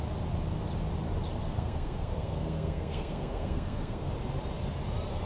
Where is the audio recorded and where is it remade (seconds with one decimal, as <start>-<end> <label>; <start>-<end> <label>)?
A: 0.0-1.4 recorded; 1.4-4.1 remade; 4.1-5.3 recorded